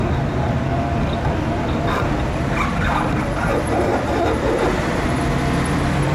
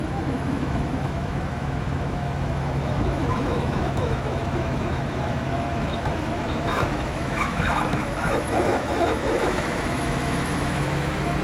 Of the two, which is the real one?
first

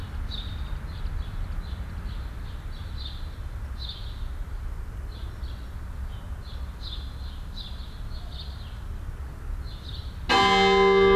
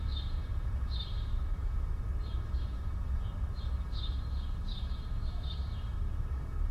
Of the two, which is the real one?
first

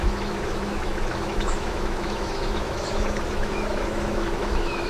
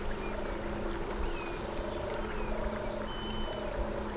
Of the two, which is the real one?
second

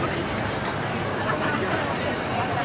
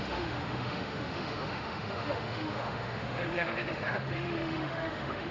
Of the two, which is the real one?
first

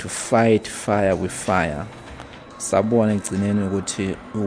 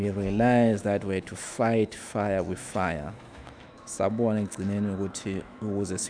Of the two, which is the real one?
first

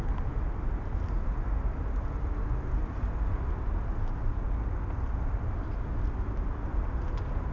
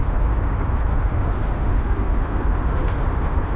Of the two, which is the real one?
first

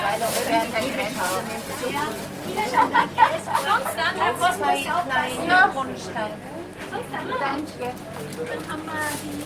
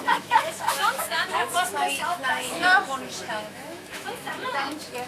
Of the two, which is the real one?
first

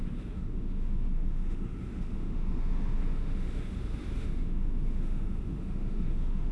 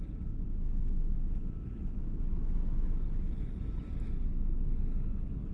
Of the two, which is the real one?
second